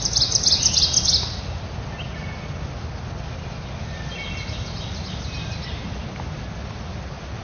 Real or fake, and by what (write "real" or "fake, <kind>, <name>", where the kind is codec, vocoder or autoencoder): real